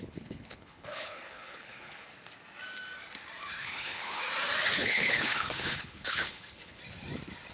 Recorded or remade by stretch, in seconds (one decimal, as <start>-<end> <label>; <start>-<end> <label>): 0.0-2.1 remade; 2.1-3.6 recorded; 3.6-4.2 remade; 4.2-4.7 recorded; 4.7-6.8 remade; 6.8-7.5 recorded

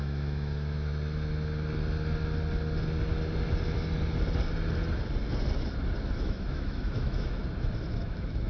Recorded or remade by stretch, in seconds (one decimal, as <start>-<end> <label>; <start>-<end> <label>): 0.0-0.9 remade; 0.9-6.0 recorded; 6.0-7.4 remade; 7.4-8.0 recorded; 8.0-8.5 remade

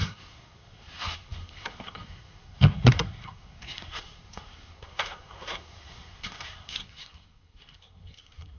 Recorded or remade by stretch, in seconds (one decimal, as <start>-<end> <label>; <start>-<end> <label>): 0.0-8.6 remade

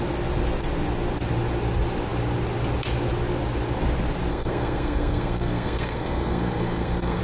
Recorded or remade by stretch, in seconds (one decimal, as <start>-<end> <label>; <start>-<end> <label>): 0.0-4.3 recorded; 4.3-7.2 remade